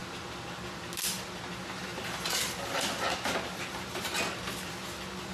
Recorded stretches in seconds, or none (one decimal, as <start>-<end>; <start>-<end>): 0.0-5.3